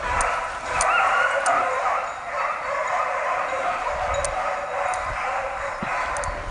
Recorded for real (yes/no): yes